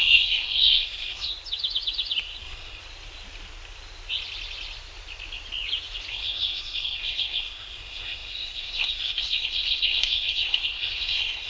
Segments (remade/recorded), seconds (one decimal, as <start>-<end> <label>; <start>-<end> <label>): 0.0-1.3 remade; 1.3-2.4 recorded; 2.4-2.8 remade; 2.8-6.1 recorded; 6.1-11.5 remade